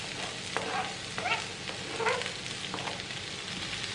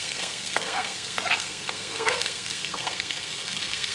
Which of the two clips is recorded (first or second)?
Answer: first